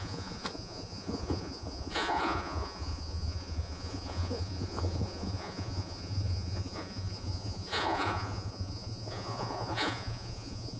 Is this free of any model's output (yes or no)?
no